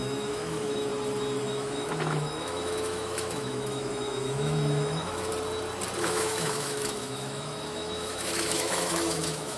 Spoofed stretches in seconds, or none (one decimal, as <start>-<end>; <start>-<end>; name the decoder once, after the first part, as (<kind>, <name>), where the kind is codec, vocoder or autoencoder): 0.0-0.9 (autoencoder, DAC-VAE); 1.4-5.3; 6.0-9.6